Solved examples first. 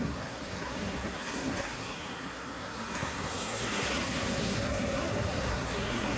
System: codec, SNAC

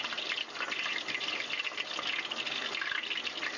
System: none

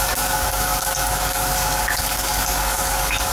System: codec, DAC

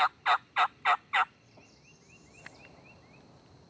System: none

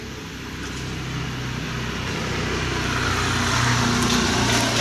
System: none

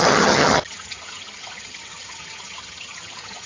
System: vocoder, HiFi-GAN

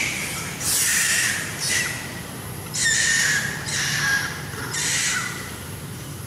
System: vocoder, BigVGAN v2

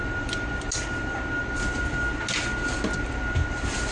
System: none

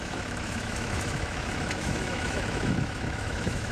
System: autoencoder, DAC-VAE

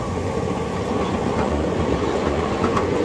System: vocoder, Vocos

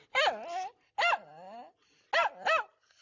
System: none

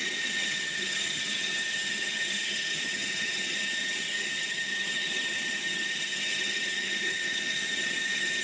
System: vocoder, HiFi-GAN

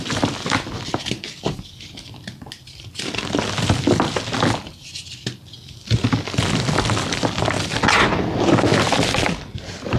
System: none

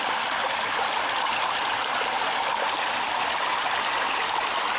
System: none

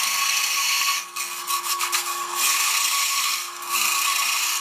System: codec, SNAC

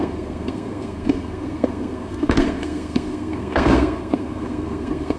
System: codec, SNAC